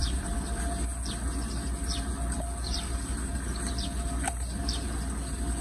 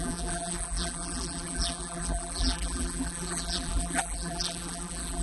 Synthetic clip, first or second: second